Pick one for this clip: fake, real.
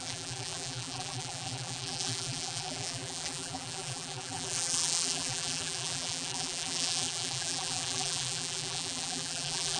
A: fake